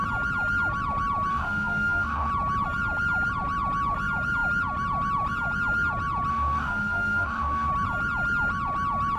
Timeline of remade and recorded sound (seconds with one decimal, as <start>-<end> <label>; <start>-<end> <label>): 0.0-1.3 recorded; 1.3-2.3 remade; 2.3-6.3 recorded; 6.3-7.7 remade; 7.7-9.2 recorded